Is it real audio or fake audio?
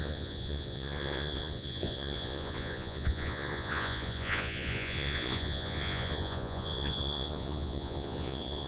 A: fake